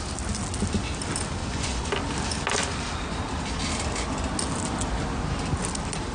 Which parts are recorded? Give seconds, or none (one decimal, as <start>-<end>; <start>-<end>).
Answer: 0.0-1.4; 1.9-6.1